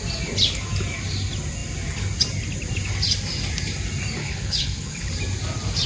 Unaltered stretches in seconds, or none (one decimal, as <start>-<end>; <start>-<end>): 0.0-4.2; 5.1-5.9